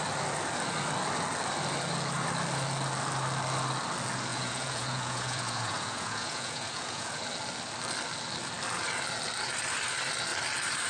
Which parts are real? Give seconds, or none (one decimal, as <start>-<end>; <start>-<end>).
0.0-4.3; 7.2-10.9

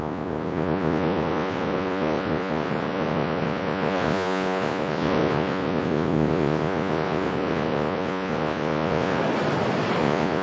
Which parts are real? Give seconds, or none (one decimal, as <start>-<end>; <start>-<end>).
9.2-10.0

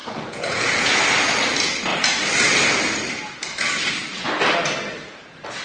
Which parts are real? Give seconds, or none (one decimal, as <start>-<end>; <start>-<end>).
1.0-5.6

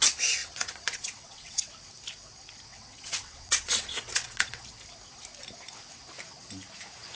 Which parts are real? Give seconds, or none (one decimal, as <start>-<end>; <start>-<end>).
0.0-0.4; 1.7-2.7; 4.6-7.2

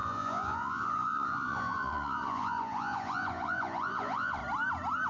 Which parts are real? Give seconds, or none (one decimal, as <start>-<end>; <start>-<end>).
4.4-5.1

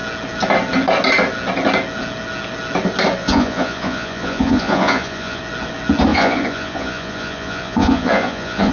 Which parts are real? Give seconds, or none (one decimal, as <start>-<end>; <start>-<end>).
0.0-3.2; 5.4-6.1

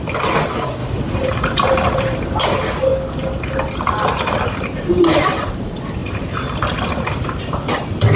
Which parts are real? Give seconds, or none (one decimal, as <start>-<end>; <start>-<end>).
0.0-0.8; 2.4-6.0; 6.5-8.2

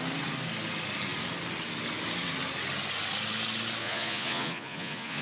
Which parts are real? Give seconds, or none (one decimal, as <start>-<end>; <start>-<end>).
0.0-3.8